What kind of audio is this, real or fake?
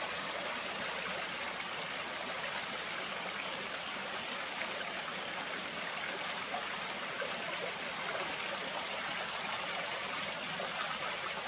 real